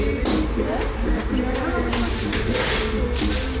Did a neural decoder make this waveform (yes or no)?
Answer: no